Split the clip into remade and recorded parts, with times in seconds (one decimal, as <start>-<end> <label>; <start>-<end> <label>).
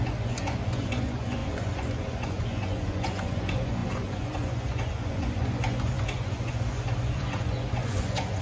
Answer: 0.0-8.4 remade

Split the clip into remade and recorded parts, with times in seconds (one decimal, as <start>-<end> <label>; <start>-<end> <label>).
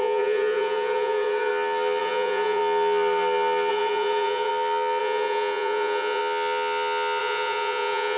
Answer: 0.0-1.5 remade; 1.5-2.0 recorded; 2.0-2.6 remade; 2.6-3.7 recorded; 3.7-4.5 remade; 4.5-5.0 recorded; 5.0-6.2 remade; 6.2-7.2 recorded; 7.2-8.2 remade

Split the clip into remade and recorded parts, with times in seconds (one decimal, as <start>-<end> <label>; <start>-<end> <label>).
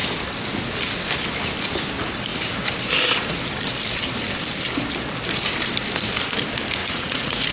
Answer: 0.0-6.8 recorded; 6.8-7.5 remade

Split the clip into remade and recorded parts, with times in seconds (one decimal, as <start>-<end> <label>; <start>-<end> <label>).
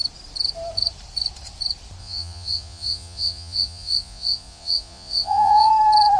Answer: 0.0-2.0 recorded; 2.0-5.7 remade; 5.7-6.2 recorded